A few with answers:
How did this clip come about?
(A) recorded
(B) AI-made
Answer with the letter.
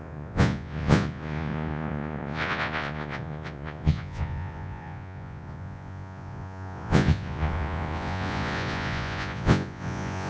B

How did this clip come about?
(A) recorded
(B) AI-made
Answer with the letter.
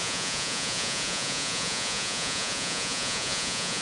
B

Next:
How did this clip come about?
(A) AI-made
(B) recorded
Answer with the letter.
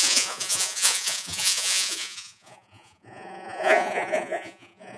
A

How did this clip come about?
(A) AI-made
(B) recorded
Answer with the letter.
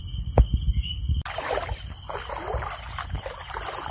B